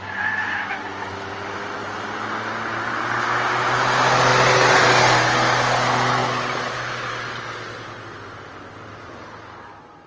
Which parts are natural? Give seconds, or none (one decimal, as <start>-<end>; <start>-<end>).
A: 0.0-10.1